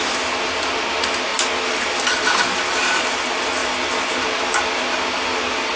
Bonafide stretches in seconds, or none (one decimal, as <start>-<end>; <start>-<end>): 0.0-5.8